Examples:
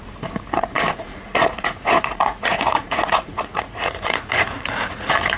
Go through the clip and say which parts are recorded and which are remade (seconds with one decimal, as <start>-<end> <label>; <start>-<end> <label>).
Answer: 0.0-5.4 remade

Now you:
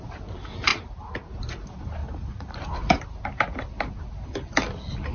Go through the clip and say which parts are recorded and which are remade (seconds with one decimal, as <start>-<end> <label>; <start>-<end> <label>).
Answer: 0.0-2.0 recorded; 2.0-2.6 remade; 2.6-5.1 recorded

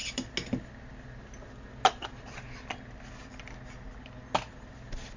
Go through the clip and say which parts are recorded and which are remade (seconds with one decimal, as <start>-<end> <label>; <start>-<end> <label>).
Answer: 0.0-5.2 recorded